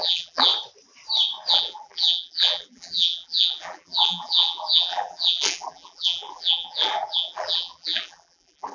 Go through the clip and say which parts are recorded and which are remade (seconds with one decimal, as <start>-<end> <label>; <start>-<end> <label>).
0.0-0.5 remade; 0.5-1.5 recorded; 1.5-8.7 remade